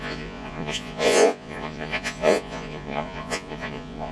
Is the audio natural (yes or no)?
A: no